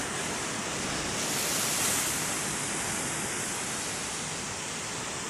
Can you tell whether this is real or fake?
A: real